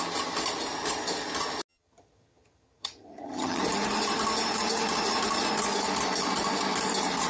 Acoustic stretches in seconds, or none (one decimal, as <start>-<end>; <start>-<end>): 0.0-1.7; 3.6-7.3